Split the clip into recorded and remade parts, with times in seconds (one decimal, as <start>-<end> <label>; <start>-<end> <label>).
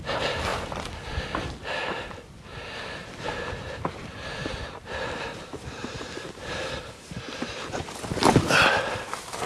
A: 0.0-3.0 recorded; 3.0-7.2 remade; 7.2-9.5 recorded